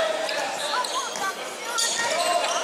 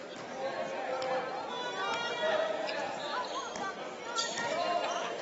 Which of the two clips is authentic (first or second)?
second